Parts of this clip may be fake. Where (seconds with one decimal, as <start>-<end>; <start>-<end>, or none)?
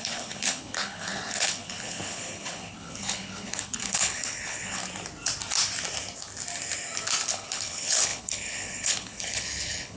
0.0-4.8; 7.3-10.0